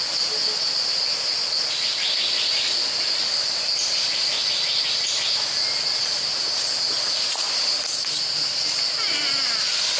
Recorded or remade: recorded